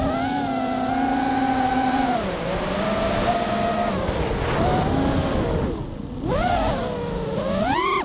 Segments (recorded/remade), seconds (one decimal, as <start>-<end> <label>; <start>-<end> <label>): 0.0-8.0 recorded